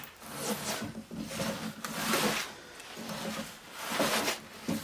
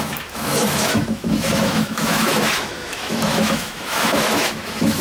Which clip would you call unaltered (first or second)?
first